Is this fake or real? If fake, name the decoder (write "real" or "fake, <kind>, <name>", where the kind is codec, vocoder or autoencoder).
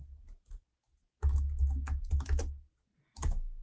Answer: real